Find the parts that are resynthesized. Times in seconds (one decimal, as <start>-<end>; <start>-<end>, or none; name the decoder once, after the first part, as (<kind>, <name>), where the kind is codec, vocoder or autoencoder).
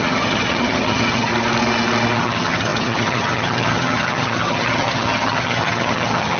0.0-1.3 (vocoder, HiFi-GAN); 2.2-6.4